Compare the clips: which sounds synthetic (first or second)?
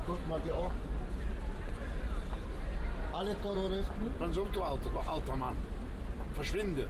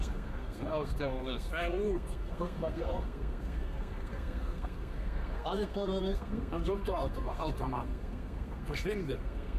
second